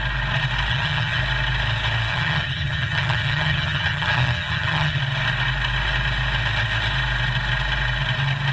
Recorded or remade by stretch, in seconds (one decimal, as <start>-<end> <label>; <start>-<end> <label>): 0.0-0.7 recorded; 0.7-1.2 remade; 1.2-2.1 recorded; 2.1-5.0 remade; 5.0-8.5 recorded